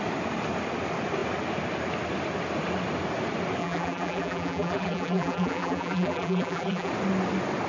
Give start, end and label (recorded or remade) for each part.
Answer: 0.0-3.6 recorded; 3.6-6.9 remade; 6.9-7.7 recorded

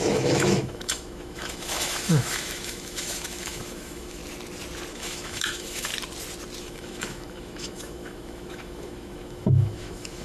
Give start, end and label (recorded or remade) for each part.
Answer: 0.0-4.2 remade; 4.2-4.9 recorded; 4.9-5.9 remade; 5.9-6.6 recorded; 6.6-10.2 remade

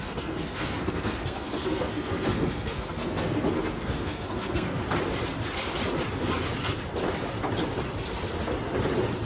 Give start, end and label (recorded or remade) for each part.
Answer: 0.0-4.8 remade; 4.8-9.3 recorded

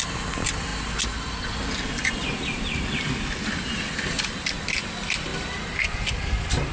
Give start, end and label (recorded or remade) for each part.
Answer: 0.0-6.7 recorded

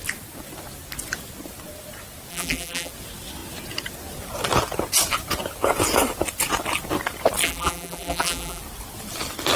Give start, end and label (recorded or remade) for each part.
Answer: 0.0-2.3 recorded; 2.3-2.9 remade; 2.9-7.4 recorded; 7.4-8.6 remade; 8.6-9.6 recorded